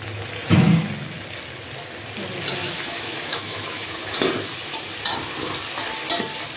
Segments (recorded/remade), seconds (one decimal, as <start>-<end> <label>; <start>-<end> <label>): 0.0-2.6 recorded; 2.6-4.0 remade; 4.0-6.6 recorded